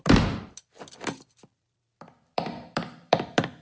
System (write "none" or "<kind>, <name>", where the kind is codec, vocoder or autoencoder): vocoder, BigVGAN v2